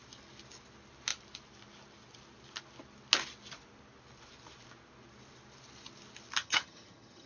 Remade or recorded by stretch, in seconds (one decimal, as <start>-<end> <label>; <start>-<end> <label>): 0.0-6.4 recorded; 6.4-7.3 remade

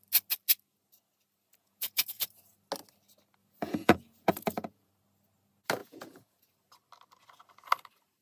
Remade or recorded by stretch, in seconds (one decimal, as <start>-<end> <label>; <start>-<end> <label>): 0.0-1.5 recorded; 1.5-2.3 remade; 2.3-3.4 recorded; 3.4-4.9 remade; 4.9-5.8 recorded; 5.8-6.5 remade; 6.5-8.2 recorded

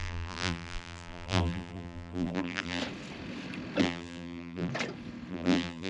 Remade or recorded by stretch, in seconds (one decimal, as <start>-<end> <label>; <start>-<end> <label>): 0.0-2.8 remade; 2.8-3.8 recorded; 3.8-4.7 remade; 4.7-5.3 recorded; 5.3-5.9 remade

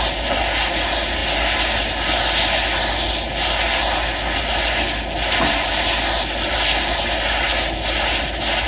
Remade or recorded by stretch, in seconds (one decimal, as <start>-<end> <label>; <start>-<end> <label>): 0.0-8.7 recorded

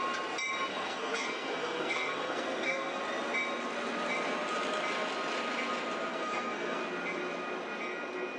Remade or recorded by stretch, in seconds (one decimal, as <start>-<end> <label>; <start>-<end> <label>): 0.0-0.7 recorded; 0.7-3.0 remade; 3.0-6.1 recorded; 6.1-6.8 remade; 6.8-8.4 recorded

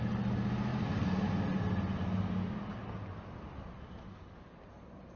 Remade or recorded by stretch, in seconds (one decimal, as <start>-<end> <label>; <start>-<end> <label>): 0.0-5.2 recorded